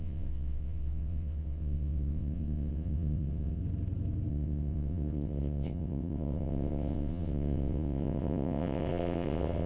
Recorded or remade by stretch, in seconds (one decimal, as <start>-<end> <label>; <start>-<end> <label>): 0.0-3.6 remade; 3.6-4.3 recorded; 4.3-9.7 remade

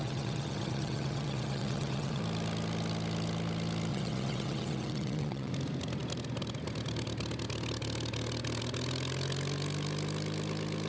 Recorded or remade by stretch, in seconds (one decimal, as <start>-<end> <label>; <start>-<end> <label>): 0.0-2.2 remade; 2.2-3.9 recorded; 3.9-5.5 remade; 5.5-10.9 recorded

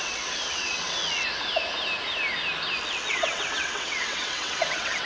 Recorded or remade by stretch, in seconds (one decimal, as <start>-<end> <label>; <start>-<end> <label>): 0.0-1.0 remade; 1.0-3.1 recorded; 3.1-5.1 remade

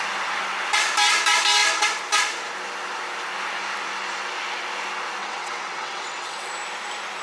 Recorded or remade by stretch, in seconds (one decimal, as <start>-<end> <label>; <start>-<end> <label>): 0.0-5.2 recorded; 5.2-6.5 remade; 6.5-7.2 recorded

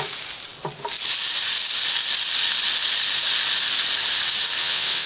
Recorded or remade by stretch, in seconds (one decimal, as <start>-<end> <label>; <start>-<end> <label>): 0.0-4.6 recorded; 4.6-5.1 remade

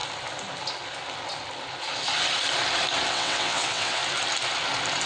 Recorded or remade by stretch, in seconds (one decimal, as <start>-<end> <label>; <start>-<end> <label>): 0.0-3.1 recorded; 3.1-4.0 remade; 4.0-5.1 recorded